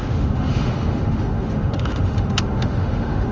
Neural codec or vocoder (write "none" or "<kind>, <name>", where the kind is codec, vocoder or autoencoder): autoencoder, DAC-VAE